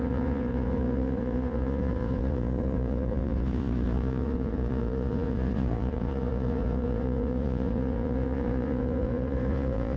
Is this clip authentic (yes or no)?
no